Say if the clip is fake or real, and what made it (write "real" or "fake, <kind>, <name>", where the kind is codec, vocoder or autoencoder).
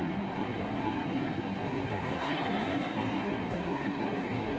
fake, codec, SNAC